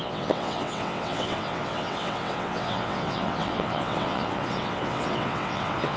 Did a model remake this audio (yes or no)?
yes